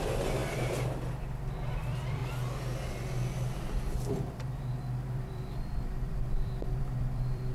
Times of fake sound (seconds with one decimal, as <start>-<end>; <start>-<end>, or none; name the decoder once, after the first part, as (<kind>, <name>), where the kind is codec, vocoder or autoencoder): 0.0-2.2 (vocoder, BigVGAN v2); 4.1-7.5